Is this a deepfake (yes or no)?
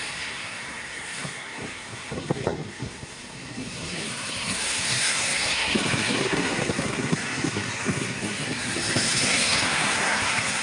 yes